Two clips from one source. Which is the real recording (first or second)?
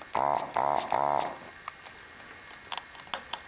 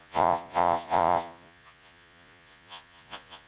first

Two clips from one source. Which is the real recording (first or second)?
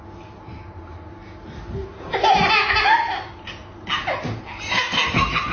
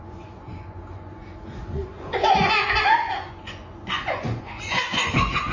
first